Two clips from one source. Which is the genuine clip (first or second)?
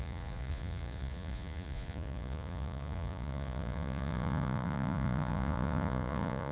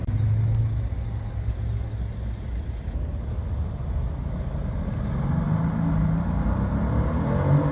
second